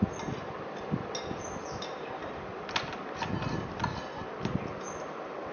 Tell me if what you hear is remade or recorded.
recorded